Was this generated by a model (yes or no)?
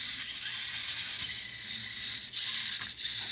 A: no